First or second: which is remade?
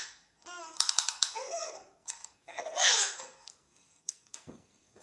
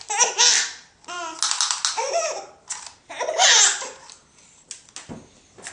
first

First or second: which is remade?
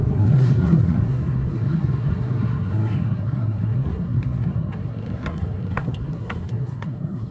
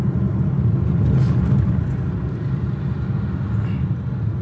first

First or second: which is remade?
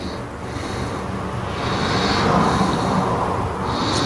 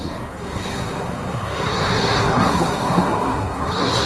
second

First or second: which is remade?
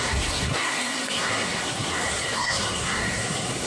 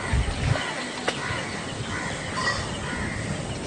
first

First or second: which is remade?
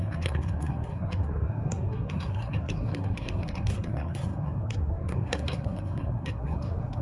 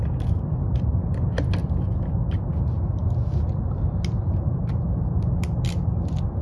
first